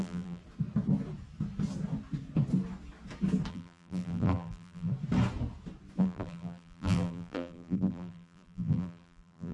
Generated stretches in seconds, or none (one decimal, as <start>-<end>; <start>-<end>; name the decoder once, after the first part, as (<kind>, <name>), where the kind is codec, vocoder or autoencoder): 0.0-0.4 (vocoder, BigVGAN v2); 3.5-4.9; 6.0-9.5

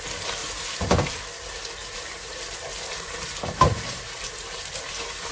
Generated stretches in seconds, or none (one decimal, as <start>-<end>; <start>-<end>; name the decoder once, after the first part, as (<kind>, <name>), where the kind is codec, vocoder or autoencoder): 0.4-1.2 (vocoder, BigVGAN v2); 1.8-5.3

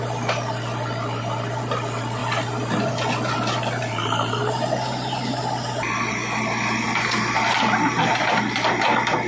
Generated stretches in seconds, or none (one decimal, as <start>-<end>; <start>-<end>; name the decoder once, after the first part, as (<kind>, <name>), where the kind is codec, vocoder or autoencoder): 2.2-2.9 (vocoder, BigVGAN v2); 4.4-5.4

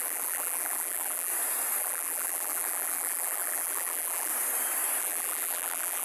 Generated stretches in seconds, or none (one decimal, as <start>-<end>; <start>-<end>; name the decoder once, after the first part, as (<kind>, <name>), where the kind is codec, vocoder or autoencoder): 0.0-1.3 (vocoder, BigVGAN v2); 1.8-4.3; 5.0-6.0

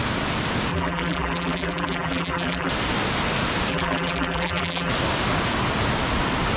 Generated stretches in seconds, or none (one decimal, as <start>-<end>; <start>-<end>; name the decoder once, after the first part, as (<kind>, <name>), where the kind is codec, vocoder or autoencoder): 0.7-2.7 (vocoder, BigVGAN v2); 3.7-4.9

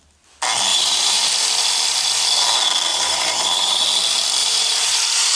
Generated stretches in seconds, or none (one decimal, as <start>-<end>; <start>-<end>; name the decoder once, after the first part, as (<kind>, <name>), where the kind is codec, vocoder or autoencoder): 0.7-1.3 (vocoder, BigVGAN v2); 2.9-3.8; 4.4-5.4

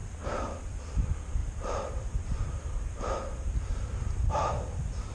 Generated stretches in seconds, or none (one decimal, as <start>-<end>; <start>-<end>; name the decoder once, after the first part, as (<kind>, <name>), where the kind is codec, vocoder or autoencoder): 1.4-4.5 (vocoder, BigVGAN v2)

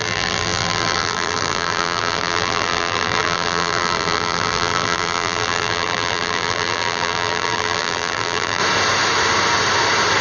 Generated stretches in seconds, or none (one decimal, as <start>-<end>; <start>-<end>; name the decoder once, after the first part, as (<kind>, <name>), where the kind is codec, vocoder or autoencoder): 0.0-8.6 (vocoder, BigVGAN v2)